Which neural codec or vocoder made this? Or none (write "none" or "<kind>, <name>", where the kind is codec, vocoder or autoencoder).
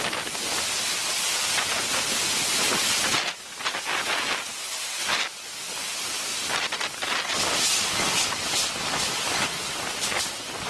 none